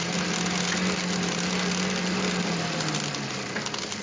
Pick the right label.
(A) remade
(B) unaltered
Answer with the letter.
B